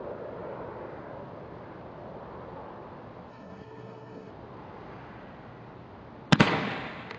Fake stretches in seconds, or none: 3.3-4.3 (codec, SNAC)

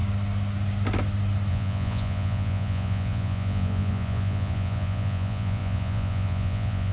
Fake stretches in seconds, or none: 1.5-6.9 (vocoder, Vocos)